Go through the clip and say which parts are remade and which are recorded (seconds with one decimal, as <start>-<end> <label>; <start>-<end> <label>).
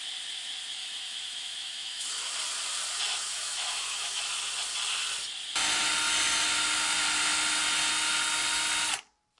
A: 0.0-0.8 recorded; 0.8-2.1 remade; 2.1-3.3 recorded; 3.3-4.2 remade; 4.2-9.4 recorded